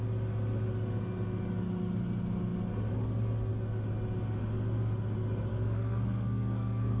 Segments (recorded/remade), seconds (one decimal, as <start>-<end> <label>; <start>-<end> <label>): 0.0-5.5 recorded; 5.5-7.0 remade